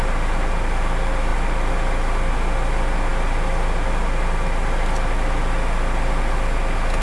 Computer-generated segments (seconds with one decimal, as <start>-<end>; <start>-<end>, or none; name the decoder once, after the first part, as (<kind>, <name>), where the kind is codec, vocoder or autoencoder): none